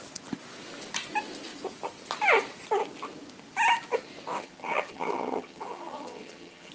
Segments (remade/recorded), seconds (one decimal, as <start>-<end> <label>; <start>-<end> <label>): 0.0-4.4 recorded; 4.4-6.7 remade